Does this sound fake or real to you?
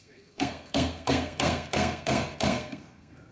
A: fake